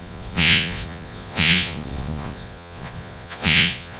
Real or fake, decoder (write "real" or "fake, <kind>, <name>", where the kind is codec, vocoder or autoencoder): fake, vocoder, Vocos